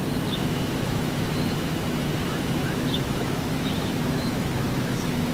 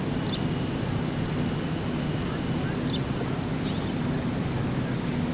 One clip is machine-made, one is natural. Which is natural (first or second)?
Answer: second